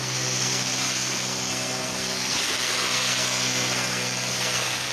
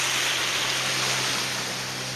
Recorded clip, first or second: second